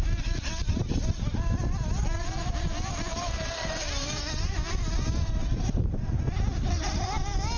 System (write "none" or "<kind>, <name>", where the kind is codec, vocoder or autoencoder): vocoder, BigVGAN v2